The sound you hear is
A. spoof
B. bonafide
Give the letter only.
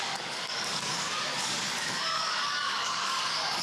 A